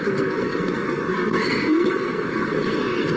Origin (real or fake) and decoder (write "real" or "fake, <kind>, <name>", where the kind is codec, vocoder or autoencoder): fake, codec, SNAC